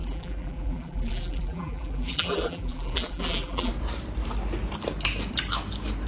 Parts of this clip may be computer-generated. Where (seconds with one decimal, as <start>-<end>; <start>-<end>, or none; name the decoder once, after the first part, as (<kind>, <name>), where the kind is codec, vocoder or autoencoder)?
0.0-3.7 (vocoder, BigVGAN v2)